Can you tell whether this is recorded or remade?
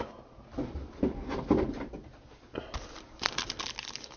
recorded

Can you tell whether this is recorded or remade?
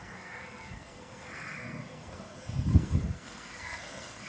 remade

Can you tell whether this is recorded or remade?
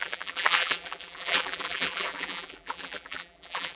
remade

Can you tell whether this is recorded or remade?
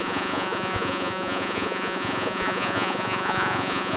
remade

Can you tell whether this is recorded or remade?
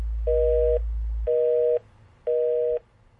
recorded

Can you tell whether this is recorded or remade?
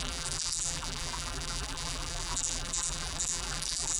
remade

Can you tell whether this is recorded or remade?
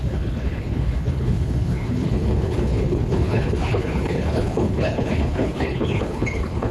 remade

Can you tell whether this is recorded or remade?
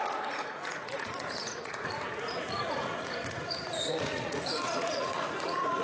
remade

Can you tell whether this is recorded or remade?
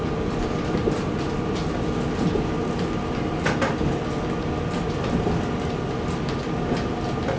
recorded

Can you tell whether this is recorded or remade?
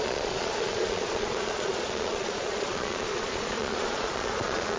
remade